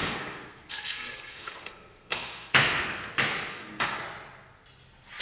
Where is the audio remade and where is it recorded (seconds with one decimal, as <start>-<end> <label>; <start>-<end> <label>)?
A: 0.0-3.1 remade; 3.1-3.5 recorded; 3.5-4.0 remade; 4.0-5.2 recorded